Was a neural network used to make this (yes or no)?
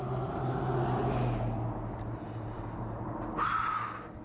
no